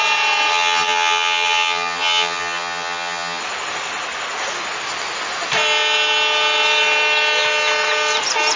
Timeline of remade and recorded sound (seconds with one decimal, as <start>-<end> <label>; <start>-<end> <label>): 0.0-0.5 recorded; 0.5-3.4 remade; 3.4-8.6 recorded